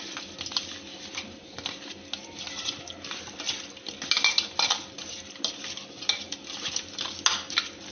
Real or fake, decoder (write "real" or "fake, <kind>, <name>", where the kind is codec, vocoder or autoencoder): real